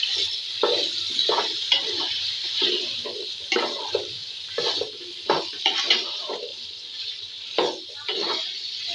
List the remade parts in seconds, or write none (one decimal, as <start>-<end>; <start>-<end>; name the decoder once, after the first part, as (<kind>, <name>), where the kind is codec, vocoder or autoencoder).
0.0-4.2 (vocoder, BigVGAN v2); 5.0-8.9